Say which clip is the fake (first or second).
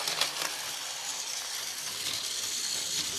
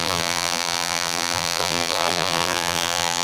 second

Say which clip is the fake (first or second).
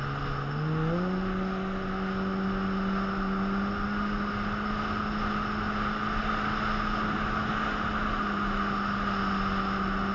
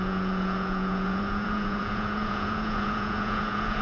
second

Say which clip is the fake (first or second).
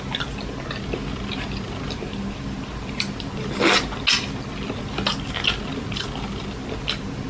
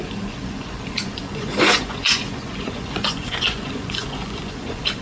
second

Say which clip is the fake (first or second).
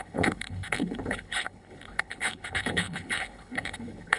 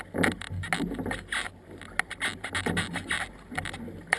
first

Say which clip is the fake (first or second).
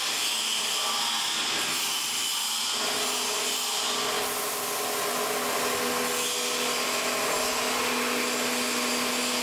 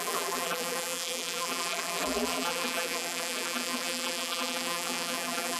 second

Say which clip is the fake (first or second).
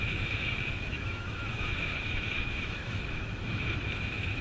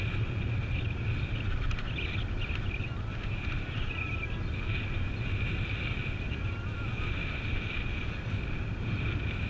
first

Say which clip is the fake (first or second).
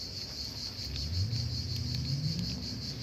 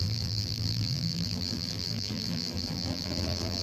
second